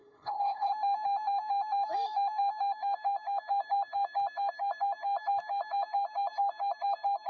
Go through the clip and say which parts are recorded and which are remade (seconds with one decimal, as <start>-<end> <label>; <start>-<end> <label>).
0.0-0.7 remade; 0.7-7.3 recorded